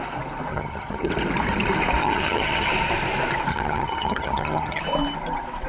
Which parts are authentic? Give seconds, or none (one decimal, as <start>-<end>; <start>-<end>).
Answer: 0.0-0.5; 1.1-2.0; 2.7-3.5; 4.8-5.7